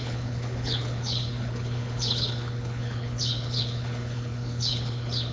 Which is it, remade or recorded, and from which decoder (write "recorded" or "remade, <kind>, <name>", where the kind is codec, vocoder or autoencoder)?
remade, codec, HILCodec